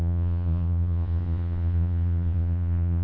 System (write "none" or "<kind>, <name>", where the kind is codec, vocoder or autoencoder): vocoder, Vocos